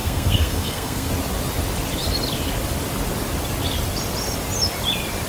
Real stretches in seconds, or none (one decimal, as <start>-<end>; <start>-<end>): 1.1-5.3